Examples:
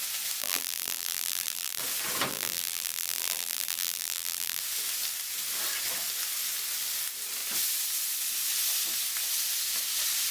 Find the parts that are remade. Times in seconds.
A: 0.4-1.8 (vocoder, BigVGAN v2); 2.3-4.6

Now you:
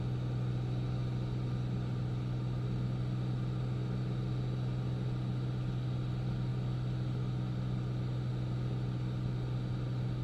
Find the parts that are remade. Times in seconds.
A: none

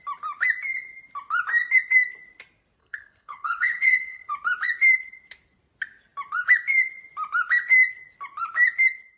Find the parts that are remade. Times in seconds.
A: 2.8-4.3 (codec, HILCodec)

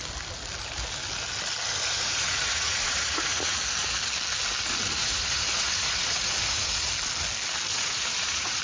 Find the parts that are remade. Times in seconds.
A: 1.8-3.6 (vocoder, Vocos); 5.0-6.9; 7.7-8.6

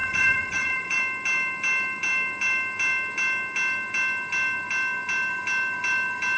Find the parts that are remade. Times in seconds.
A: 0.0-1.0 (vocoder, Vocos)

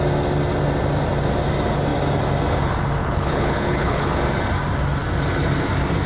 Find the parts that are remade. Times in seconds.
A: 3.0-4.1 (codec, HILCodec)

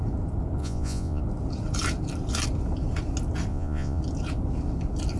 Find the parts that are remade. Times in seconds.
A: 0.6-1.2 (vocoder, Vocos); 3.5-4.0